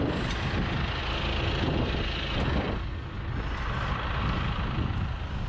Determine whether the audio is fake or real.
real